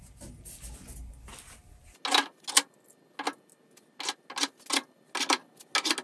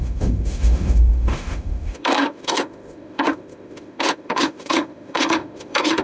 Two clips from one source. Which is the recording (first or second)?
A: first